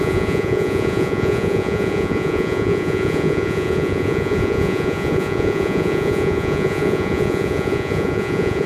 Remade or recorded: remade